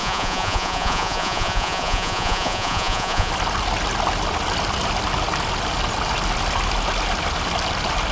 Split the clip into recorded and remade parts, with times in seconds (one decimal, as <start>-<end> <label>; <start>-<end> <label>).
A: 0.0-3.3 remade; 3.3-8.1 recorded